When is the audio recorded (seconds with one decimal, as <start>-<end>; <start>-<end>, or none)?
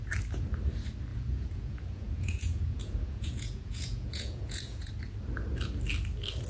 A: 0.0-1.1; 4.9-6.5